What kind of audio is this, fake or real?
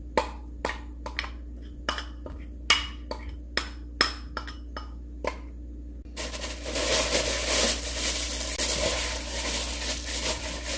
real